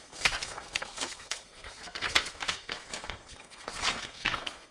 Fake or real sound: fake